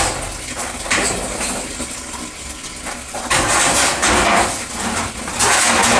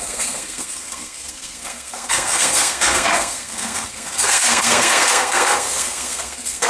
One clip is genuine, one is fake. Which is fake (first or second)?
second